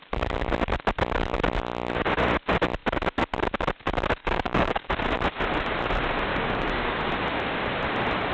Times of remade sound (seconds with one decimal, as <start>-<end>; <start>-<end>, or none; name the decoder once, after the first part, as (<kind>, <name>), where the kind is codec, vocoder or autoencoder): 4.2-4.9 (codec, DAC); 6.3-7.0